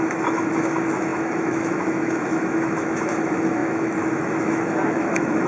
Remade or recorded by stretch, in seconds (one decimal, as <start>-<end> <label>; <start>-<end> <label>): 0.0-5.5 remade